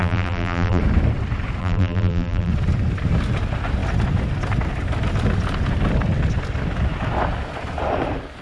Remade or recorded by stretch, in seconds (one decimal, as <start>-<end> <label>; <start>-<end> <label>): 0.0-0.8 remade; 0.8-1.6 recorded; 1.6-2.5 remade; 2.5-8.4 recorded